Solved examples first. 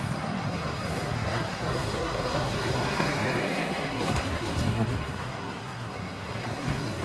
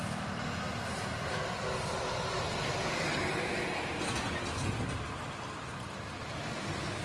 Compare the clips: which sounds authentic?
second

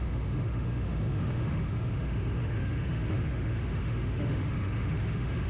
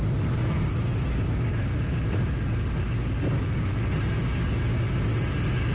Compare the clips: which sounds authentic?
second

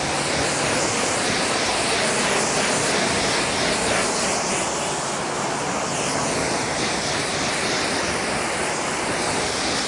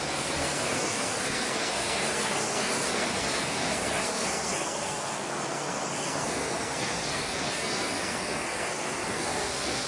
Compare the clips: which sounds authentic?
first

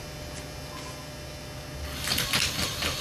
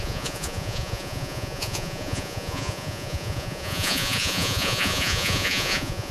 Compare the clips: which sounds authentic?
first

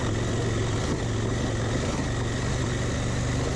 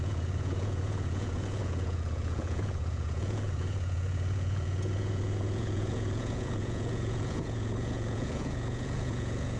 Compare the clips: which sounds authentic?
first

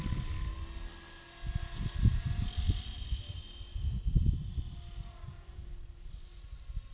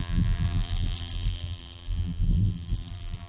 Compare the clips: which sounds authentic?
first